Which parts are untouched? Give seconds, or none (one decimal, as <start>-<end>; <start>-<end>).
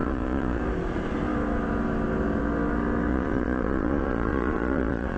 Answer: 0.6-3.1